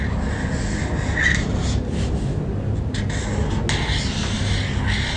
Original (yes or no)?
yes